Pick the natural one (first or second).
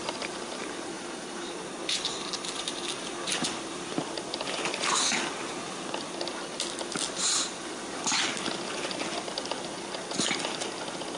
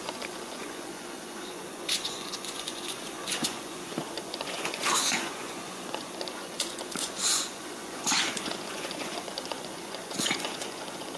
first